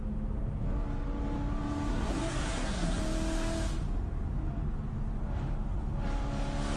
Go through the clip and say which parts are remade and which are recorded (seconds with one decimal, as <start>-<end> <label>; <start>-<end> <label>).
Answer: 0.0-1.9 recorded; 1.9-3.0 remade; 3.0-6.8 recorded